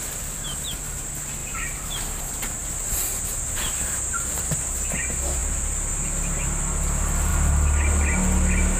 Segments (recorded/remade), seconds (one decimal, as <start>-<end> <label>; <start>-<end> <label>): 0.0-1.4 recorded; 1.4-2.2 remade; 2.2-5.4 recorded; 5.4-5.9 remade; 5.9-8.8 recorded